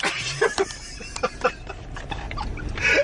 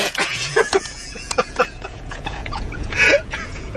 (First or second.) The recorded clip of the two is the first